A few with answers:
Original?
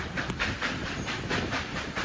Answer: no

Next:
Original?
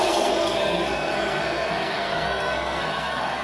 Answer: no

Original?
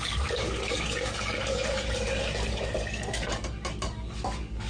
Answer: no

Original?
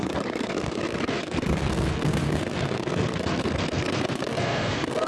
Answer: no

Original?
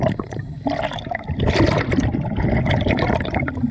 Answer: yes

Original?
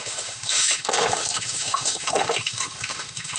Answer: no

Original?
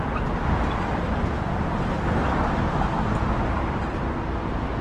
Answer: yes